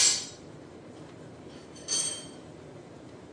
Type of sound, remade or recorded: remade